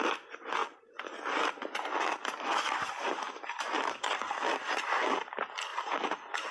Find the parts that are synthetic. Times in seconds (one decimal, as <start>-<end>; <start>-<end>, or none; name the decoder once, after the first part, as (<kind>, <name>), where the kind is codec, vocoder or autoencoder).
none